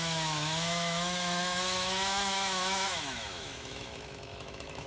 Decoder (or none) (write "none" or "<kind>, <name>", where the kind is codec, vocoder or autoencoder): autoencoder, DAC-VAE